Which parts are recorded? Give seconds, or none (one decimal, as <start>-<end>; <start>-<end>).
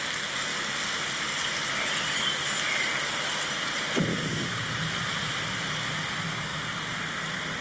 0.0-4.1; 4.8-7.6